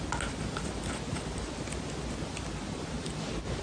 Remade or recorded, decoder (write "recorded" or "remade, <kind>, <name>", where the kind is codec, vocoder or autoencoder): recorded